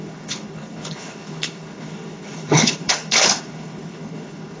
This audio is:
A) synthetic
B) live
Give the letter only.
A